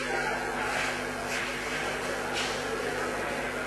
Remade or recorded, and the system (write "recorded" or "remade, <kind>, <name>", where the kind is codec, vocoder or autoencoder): recorded